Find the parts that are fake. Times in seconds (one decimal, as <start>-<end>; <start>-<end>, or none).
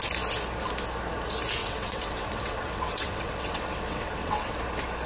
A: 1.6-4.6